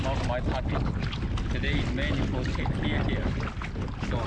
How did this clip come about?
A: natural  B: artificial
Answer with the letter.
A